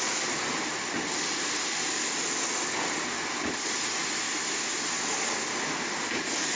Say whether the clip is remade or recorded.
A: recorded